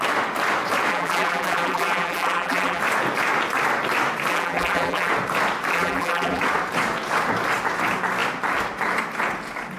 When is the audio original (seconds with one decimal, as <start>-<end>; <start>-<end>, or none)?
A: 0.0-0.9; 2.8-4.3; 5.1-5.7; 6.4-9.8